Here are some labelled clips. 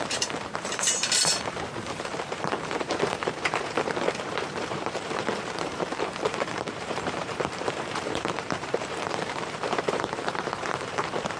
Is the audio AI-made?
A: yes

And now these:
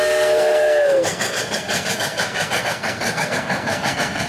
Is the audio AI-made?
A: yes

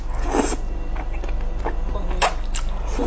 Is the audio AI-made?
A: no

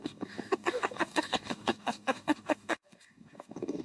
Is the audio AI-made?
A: yes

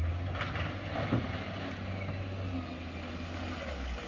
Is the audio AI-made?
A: no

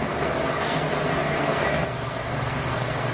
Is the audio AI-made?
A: yes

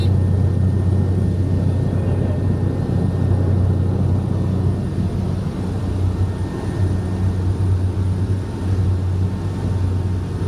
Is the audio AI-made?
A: no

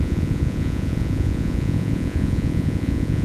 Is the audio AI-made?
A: yes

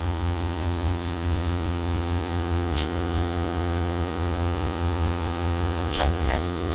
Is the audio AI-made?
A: yes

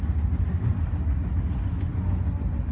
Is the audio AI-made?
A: no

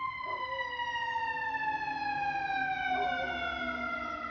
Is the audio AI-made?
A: no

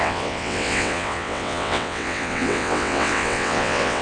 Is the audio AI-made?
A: yes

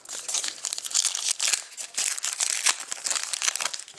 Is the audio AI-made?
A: no